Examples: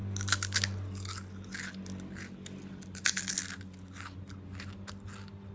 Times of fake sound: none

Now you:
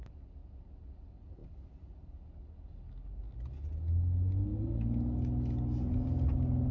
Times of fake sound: none

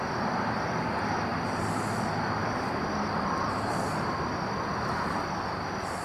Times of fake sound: none